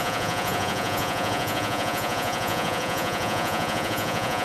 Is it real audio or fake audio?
fake